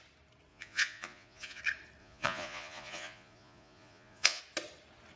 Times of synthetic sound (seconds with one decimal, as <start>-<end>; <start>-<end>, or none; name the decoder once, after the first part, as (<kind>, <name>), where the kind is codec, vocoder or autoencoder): 0.5-1.6 (vocoder, Vocos); 2.0-4.4

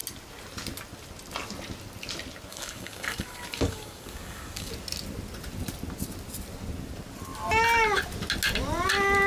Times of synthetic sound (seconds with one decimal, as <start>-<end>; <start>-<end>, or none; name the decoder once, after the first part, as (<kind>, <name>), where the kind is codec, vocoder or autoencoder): 2.5-4.7 (codec, DAC)